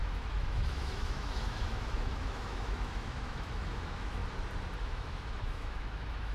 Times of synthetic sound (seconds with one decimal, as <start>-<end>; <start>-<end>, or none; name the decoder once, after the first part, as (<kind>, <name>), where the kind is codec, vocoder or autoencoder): 0.0-4.2 (autoencoder, DAC-VAE); 4.8-6.3